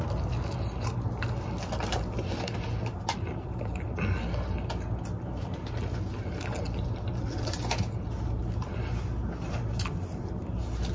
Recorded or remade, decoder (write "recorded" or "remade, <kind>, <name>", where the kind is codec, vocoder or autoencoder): recorded